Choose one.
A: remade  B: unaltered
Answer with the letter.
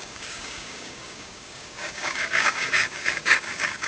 A